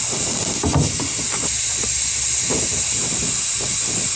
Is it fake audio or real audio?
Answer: real